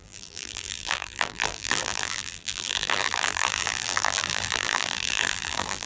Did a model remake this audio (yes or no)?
yes